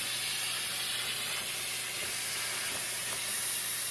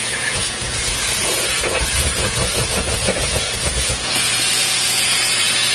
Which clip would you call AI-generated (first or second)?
second